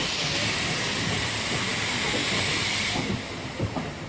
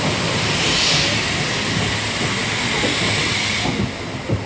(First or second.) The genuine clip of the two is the second